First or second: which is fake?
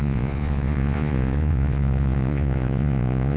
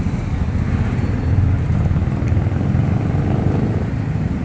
first